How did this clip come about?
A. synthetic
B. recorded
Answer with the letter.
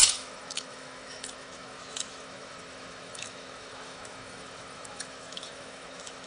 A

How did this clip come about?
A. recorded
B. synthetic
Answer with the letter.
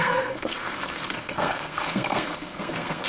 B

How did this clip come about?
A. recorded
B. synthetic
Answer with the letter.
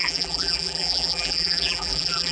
B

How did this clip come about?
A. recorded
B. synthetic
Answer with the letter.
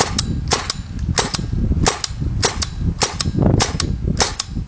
A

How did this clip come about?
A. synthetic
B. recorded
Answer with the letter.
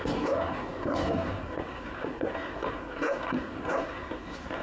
A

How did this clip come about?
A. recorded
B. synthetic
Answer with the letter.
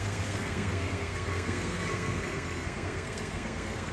B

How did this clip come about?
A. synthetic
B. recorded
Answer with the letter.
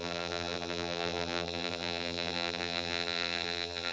A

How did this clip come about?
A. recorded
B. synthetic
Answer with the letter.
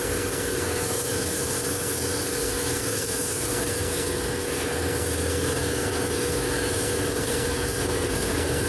B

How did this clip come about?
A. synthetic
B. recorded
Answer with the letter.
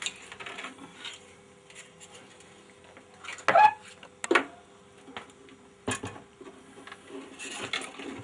B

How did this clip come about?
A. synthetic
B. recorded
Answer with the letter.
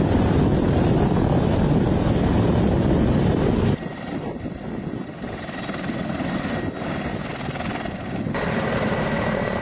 B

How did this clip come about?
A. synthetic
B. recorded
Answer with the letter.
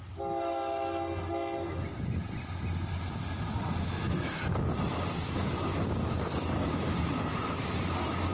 B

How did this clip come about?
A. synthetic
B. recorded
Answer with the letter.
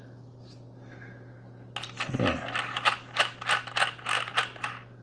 B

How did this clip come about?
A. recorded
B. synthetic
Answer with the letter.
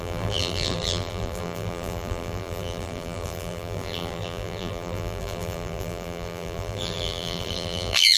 B